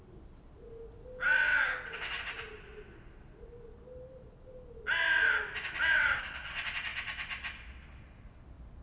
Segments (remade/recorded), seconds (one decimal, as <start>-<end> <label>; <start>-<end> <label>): 0.0-8.8 recorded